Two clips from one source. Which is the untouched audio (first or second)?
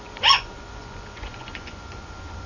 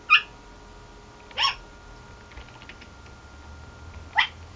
second